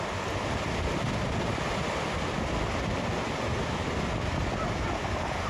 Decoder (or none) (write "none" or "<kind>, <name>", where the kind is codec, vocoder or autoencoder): none